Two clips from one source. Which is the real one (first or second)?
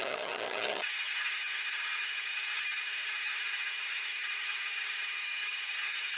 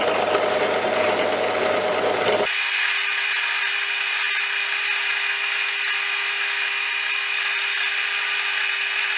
second